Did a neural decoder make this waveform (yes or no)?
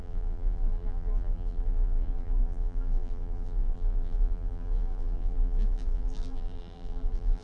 yes